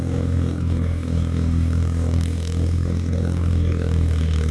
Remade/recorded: remade